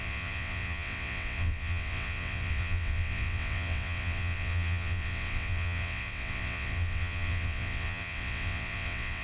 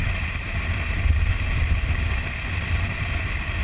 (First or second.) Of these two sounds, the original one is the second